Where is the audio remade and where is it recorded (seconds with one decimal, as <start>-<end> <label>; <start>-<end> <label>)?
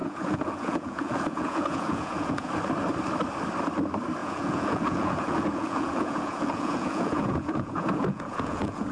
0.0-2.5 remade; 2.5-4.2 recorded; 4.2-8.9 remade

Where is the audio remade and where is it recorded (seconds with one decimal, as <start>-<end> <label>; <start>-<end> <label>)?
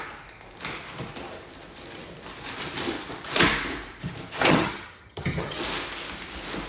0.0-4.5 recorded; 4.5-5.6 remade; 5.6-6.7 recorded